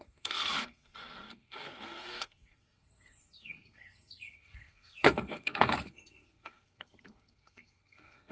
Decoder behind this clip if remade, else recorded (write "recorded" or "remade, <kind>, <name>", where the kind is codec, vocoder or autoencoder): remade, codec, SNAC